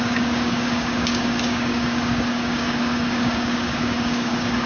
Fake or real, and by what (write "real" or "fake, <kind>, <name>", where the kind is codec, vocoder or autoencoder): fake, codec, DAC